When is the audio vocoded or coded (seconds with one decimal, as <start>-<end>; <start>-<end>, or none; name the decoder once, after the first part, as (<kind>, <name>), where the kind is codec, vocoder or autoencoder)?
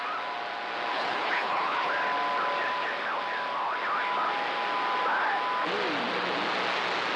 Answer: 0.9-1.9 (codec, HILCodec)